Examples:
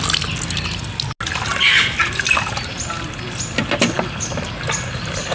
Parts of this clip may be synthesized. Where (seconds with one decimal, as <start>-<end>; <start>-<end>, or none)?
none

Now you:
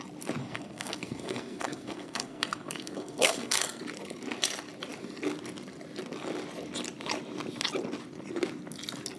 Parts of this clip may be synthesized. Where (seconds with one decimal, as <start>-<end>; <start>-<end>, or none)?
0.4-3.8

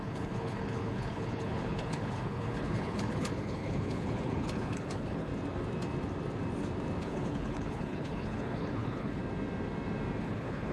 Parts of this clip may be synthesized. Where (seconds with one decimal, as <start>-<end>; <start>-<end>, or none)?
0.0-5.3; 7.0-9.2; 10.2-10.7